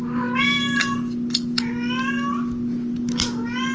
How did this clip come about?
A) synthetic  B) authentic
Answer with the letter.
B